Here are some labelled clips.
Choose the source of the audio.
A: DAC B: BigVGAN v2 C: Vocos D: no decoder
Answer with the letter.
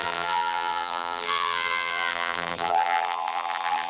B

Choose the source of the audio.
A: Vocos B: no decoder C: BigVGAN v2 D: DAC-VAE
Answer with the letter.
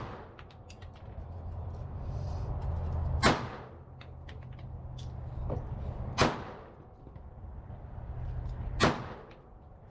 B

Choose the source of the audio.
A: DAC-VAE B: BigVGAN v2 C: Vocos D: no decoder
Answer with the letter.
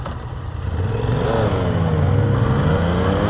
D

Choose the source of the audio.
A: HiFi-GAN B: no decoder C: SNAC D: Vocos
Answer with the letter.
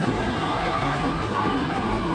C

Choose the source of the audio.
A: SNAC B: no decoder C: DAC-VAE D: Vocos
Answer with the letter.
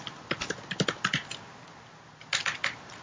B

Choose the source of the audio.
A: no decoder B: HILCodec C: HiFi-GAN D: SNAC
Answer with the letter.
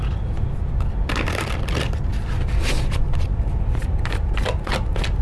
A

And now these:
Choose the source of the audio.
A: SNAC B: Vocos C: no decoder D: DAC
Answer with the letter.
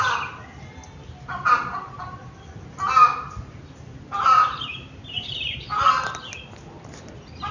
C